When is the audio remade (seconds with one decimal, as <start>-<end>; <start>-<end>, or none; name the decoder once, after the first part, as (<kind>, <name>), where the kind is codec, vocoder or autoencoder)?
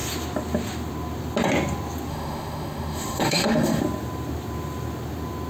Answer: 2.1-3.8 (autoencoder, DAC-VAE)